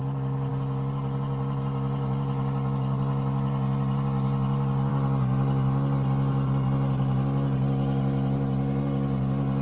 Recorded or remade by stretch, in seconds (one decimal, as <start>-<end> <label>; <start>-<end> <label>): 0.0-9.6 recorded